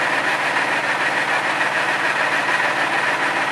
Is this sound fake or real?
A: real